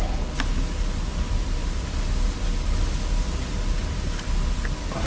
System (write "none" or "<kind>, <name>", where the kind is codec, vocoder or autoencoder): none